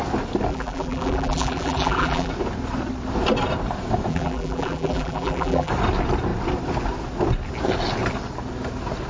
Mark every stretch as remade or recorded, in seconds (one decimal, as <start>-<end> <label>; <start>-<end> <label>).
0.0-0.5 recorded; 0.5-2.3 remade; 2.3-4.1 recorded; 4.1-5.7 remade; 5.7-9.1 recorded